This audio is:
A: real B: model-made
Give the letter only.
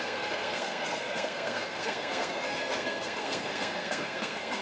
B